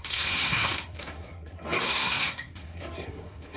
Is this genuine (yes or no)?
no